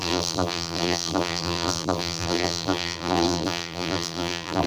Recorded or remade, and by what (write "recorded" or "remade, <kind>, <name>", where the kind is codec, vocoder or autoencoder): remade, vocoder, BigVGAN v2